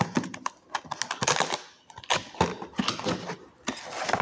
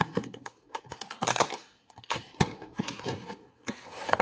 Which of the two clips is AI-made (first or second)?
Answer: second